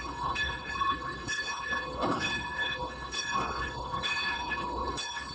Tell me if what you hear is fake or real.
fake